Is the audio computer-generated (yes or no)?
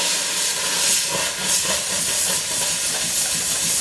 no